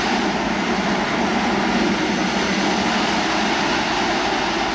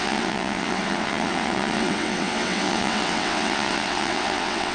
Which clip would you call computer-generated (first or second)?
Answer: second